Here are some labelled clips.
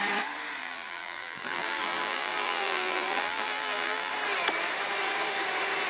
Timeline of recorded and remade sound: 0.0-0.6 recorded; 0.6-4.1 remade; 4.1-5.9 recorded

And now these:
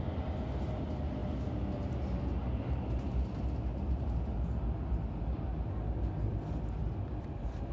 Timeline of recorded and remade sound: 0.0-7.7 recorded